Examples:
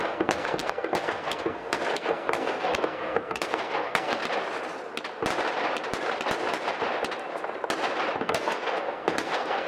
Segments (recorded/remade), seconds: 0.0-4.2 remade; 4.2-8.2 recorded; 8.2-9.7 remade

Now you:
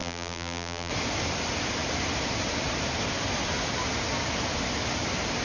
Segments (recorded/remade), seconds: 0.0-0.9 remade; 0.9-5.4 recorded

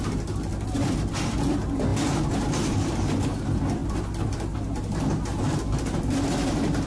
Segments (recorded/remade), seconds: 0.0-6.9 recorded

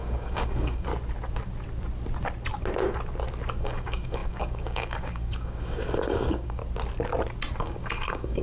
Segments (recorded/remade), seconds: 0.0-0.9 remade; 0.9-3.6 recorded; 3.6-6.6 remade; 6.6-7.6 recorded; 7.6-8.4 remade

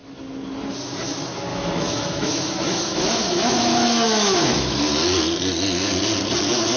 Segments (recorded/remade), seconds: 0.0-1.5 recorded; 1.5-4.8 remade; 4.8-6.8 recorded

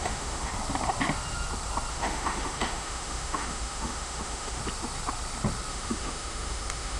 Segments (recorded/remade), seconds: 0.0-0.5 remade; 0.5-1.9 recorded; 1.9-4.6 remade; 4.6-5.7 recorded; 5.7-7.0 remade